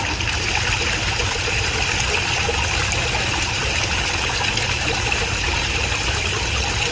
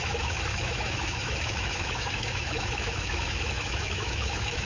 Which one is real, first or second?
first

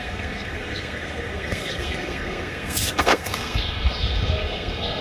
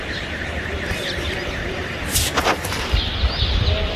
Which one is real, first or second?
second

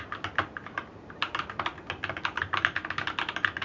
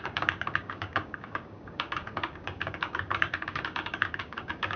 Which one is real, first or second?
first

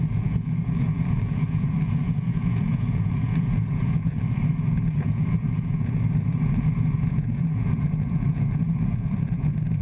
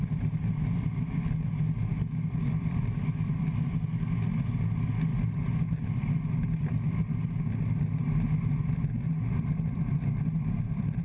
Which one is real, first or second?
second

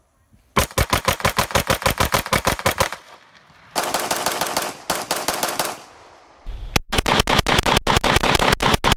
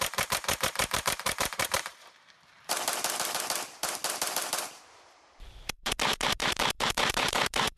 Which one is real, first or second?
first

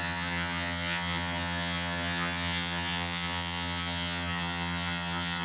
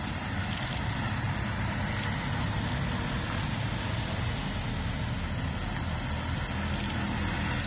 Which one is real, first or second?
second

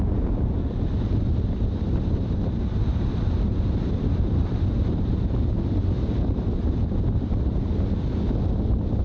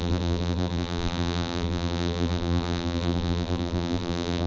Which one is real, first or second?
first